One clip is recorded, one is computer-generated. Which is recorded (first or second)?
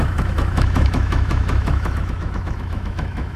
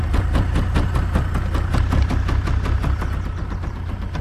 second